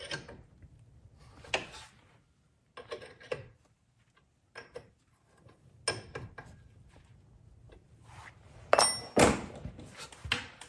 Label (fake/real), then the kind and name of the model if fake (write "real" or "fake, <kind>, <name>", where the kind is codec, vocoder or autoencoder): real